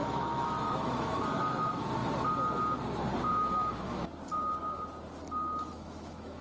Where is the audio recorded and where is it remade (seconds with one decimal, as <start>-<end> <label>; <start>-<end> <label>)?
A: 0.0-2.0 remade; 2.0-3.3 recorded; 3.3-4.1 remade; 4.1-5.7 recorded; 5.7-6.4 remade